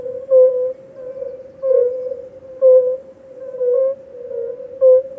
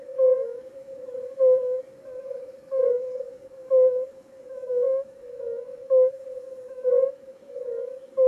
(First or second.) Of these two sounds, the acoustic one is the first